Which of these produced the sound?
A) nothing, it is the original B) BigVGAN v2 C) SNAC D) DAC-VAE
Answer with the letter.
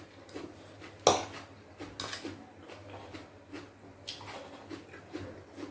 A